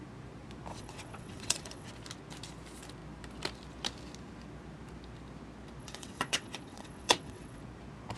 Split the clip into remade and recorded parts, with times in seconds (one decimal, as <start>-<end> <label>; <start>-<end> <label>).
0.0-0.7 recorded; 0.7-1.9 remade; 1.9-5.8 recorded; 5.8-7.6 remade; 7.6-8.2 recorded